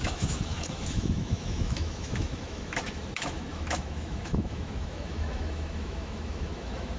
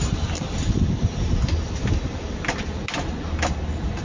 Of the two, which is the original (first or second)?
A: second